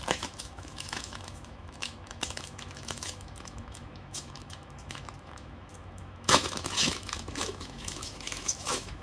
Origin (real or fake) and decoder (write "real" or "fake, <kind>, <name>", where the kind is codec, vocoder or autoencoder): fake, autoencoder, DAC-VAE